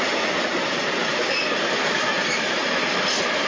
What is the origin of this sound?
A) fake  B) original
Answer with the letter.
B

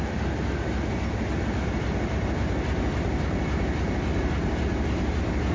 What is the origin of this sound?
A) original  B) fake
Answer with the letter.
A